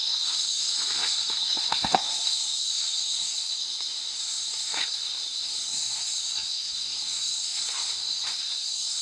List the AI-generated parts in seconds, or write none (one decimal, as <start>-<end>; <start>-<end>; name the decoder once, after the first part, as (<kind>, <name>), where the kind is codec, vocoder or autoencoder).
0.0-9.0 (codec, SNAC)